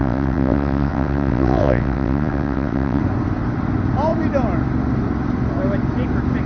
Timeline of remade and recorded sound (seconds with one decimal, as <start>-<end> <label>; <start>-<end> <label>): 0.0-3.0 remade; 3.0-6.5 recorded